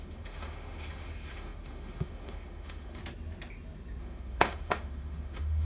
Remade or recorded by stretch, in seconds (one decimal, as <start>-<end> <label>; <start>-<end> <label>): 0.0-3.0 remade; 3.0-4.0 recorded; 4.0-5.6 remade